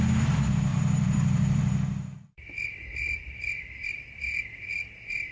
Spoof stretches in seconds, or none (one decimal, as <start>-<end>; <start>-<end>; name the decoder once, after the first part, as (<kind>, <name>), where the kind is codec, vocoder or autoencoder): 0.7-3.9 (vocoder, BigVGAN v2)